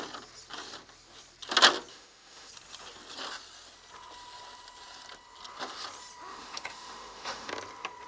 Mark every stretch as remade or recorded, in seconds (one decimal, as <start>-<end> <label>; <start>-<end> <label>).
0.0-1.9 recorded; 1.9-2.5 remade; 2.5-6.3 recorded; 6.3-7.5 remade; 7.5-8.1 recorded